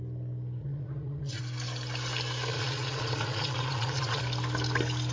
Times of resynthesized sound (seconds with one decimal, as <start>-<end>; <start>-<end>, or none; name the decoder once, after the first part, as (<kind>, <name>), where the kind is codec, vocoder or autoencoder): 0.6-1.4 (vocoder, Vocos); 2.5-4.2